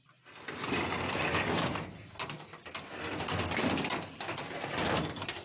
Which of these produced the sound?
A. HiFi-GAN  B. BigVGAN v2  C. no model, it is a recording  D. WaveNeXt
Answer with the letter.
C